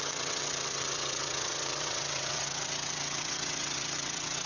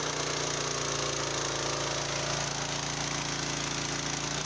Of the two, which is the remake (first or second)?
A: first